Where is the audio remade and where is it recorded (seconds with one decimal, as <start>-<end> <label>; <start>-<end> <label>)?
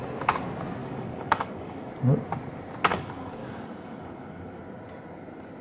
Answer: 0.0-0.8 recorded; 0.8-1.9 remade; 1.9-2.9 recorded; 2.9-4.6 remade; 4.6-5.6 recorded